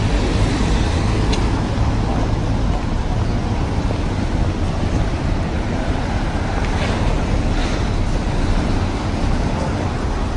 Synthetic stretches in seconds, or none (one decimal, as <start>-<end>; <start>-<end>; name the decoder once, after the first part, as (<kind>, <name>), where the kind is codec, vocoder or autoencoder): 7.6-8.4 (vocoder, BigVGAN v2)